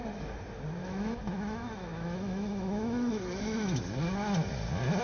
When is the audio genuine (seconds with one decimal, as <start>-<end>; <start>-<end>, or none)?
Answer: 0.0-0.8; 3.8-5.0